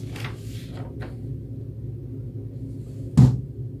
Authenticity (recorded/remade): recorded